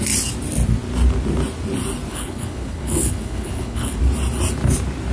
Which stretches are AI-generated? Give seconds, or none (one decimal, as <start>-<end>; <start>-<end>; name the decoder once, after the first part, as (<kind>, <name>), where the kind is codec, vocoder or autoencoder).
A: 2.1-4.0 (codec, HILCodec)